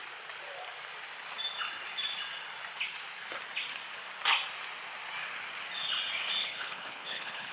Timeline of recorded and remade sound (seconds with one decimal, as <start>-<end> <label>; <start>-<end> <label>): 0.0-6.4 recorded; 6.4-7.5 remade